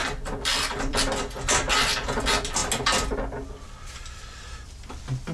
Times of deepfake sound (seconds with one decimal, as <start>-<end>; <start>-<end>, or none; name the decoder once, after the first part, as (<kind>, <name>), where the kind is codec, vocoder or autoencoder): 0.0-1.0 (vocoder, BigVGAN v2)